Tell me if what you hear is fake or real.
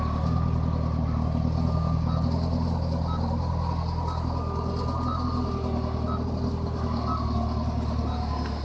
real